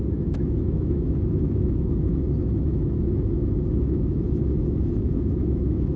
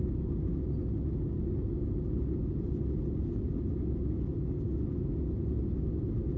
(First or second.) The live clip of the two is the second